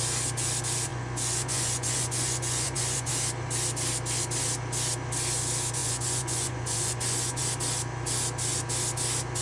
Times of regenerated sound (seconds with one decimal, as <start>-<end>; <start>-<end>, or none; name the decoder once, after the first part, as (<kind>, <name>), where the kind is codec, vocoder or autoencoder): 0.9-3.1 (vocoder, Vocos); 5.8-7.4